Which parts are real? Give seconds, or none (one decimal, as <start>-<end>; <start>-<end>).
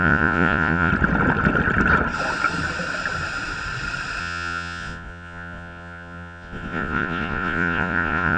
0.9-4.2